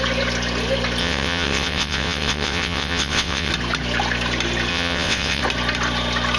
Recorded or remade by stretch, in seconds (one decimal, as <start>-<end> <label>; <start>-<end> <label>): 0.0-1.0 recorded; 1.0-3.5 remade; 3.5-4.7 recorded; 4.7-5.4 remade; 5.4-6.4 recorded